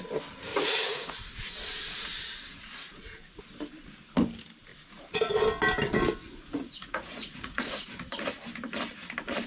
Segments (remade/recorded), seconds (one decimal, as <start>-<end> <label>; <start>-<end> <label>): 0.0-0.5 recorded; 0.5-3.4 remade; 3.4-4.7 recorded; 4.7-5.4 remade; 5.4-6.2 recorded; 6.2-7.9 remade; 7.9-9.5 recorded